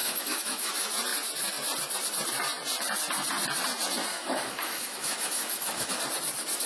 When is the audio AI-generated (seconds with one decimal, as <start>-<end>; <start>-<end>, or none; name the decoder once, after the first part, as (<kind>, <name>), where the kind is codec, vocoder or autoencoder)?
0.0-0.7 (autoencoder, DAC-VAE); 4.1-6.0